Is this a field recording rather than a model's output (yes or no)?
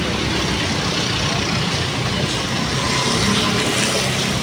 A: yes